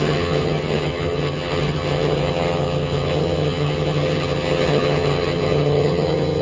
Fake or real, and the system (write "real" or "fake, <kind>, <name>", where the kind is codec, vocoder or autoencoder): fake, vocoder, HiFi-GAN